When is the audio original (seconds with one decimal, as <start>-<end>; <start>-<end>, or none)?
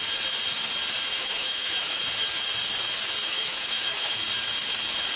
0.0-1.1; 2.0-3.2; 4.2-5.2